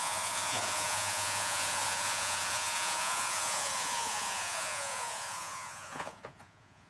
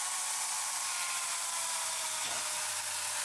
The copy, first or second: first